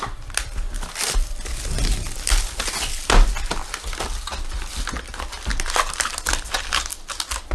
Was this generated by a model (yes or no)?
no